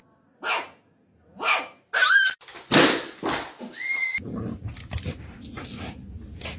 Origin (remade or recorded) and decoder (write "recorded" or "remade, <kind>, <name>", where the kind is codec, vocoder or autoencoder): recorded